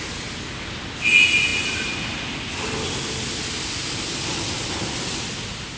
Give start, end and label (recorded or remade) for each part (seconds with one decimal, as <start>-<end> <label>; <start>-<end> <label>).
0.0-5.8 recorded